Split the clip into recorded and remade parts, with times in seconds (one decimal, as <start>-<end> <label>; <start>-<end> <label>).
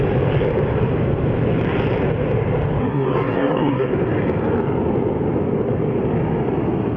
0.0-2.8 recorded; 2.8-3.9 remade; 3.9-7.0 recorded